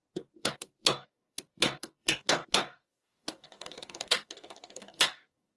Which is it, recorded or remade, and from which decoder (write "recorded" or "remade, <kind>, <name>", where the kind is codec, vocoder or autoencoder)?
remade, codec, DAC